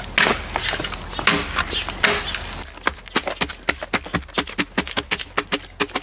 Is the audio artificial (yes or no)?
no